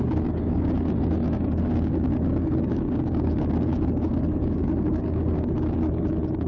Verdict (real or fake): fake